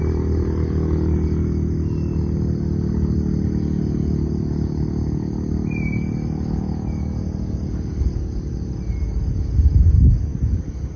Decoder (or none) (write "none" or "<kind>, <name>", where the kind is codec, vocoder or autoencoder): none